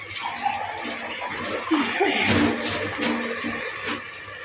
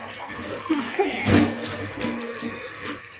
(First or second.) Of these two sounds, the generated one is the second